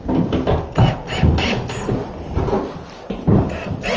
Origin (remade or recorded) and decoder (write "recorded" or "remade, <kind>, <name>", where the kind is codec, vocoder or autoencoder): recorded